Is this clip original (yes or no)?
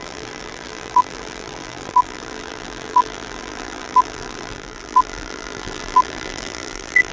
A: no